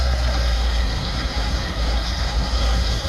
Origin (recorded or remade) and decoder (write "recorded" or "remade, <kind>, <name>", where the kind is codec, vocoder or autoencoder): remade, codec, SNAC